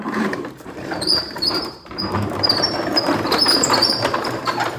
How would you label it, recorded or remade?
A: remade